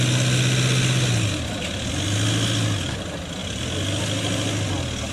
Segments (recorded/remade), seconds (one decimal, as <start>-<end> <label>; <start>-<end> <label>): 0.0-5.1 recorded